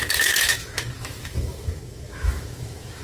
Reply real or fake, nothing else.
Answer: fake